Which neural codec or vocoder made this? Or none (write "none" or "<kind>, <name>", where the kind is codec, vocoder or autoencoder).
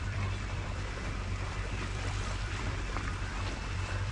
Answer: vocoder, BigVGAN v2